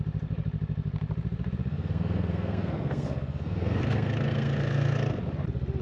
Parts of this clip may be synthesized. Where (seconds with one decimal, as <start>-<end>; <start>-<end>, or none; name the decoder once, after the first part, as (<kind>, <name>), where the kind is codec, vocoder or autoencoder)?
1.7-5.2 (codec, SNAC)